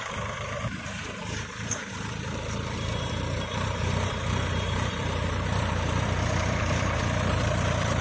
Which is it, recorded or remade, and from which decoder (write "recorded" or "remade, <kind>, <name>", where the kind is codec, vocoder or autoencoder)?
remade, vocoder, BigVGAN v2